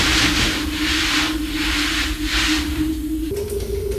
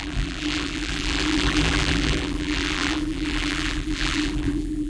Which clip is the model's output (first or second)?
second